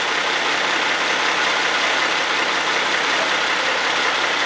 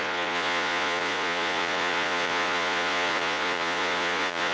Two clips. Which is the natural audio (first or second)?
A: first